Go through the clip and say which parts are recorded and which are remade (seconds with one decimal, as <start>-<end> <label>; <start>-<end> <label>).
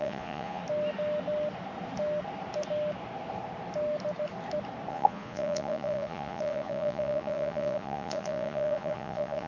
0.0-0.6 remade; 0.6-4.9 recorded; 4.9-9.5 remade